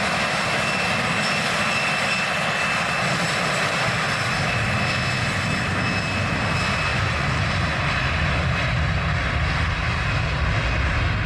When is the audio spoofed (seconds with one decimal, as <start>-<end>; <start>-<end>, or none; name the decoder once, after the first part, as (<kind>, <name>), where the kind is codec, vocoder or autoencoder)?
6.9-7.4 (vocoder, Vocos)